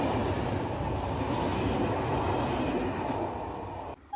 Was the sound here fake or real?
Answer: real